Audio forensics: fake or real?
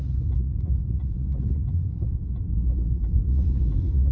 fake